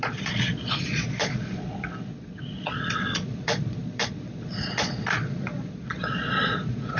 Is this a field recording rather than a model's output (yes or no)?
no